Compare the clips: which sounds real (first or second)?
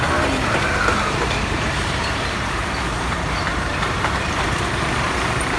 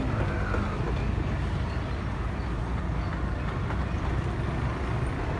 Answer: second